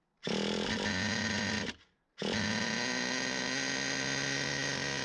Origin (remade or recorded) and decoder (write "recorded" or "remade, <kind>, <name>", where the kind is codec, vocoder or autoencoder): recorded